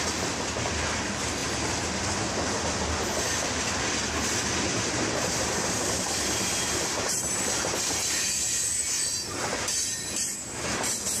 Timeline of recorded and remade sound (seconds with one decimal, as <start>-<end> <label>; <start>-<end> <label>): 0.0-4.7 recorded; 4.7-8.3 remade; 8.3-11.2 recorded

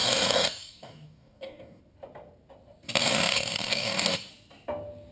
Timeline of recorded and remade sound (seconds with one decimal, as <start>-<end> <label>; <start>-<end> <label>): 0.0-1.8 remade; 1.8-3.0 recorded; 3.0-4.3 remade; 4.3-5.1 recorded

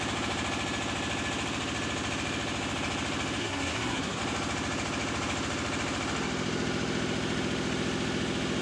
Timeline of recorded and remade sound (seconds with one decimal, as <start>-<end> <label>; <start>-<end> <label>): 0.0-3.4 recorded; 3.4-4.2 remade; 4.2-8.6 recorded